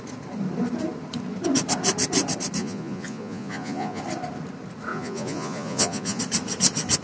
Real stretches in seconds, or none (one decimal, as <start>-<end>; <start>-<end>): 0.0-2.6; 4.0-4.9; 6.2-7.0